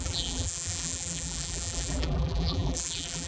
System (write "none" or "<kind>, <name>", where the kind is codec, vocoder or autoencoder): vocoder, BigVGAN v2